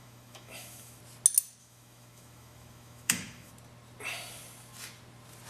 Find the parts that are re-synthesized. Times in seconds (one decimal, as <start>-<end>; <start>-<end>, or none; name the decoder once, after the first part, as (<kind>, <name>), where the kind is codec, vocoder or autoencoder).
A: 0.0-1.0 (autoencoder, DAC-VAE); 1.6-3.5